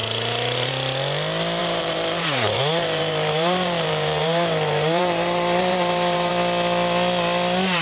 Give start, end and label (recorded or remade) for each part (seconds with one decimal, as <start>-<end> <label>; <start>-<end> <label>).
0.0-1.6 recorded; 1.6-6.3 remade; 6.3-7.8 recorded